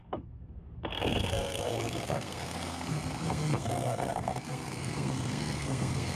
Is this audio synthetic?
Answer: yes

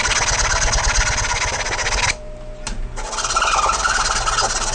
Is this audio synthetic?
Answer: no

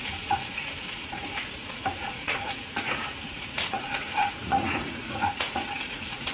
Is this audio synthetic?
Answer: yes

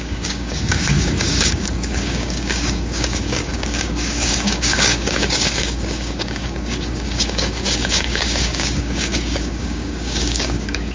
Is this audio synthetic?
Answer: yes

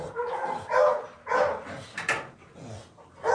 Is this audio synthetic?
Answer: no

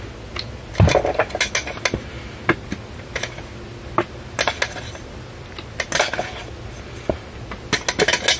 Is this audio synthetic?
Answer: no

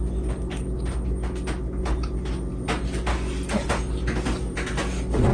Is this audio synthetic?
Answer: no